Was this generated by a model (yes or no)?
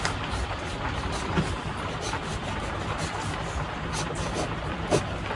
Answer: no